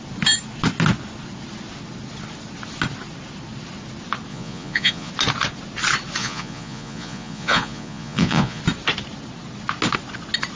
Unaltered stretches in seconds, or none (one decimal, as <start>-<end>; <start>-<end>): 0.0-4.3; 5.1-6.2; 8.6-10.6